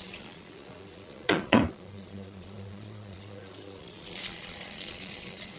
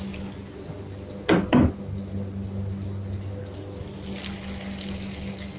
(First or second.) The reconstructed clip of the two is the first